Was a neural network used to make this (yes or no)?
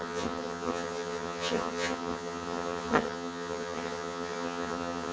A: yes